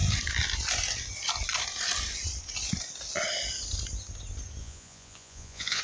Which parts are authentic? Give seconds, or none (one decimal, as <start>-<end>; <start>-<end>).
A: 0.0-4.6